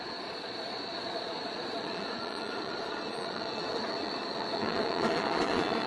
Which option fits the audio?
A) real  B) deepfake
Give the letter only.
B